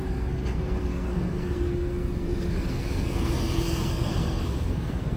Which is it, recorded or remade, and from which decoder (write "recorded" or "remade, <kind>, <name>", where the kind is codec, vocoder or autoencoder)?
remade, codec, SNAC